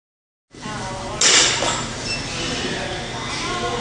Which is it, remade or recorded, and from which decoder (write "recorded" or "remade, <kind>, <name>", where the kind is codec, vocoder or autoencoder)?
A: recorded